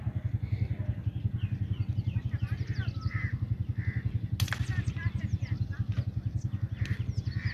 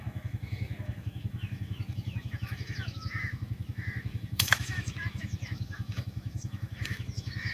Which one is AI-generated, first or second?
second